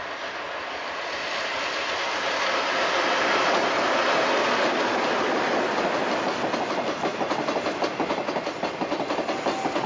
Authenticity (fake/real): real